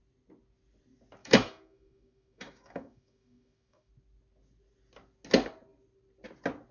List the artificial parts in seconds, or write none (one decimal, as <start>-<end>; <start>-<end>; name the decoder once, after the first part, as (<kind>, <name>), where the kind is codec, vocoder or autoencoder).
1.2-3.9 (autoencoder, DAC-VAE)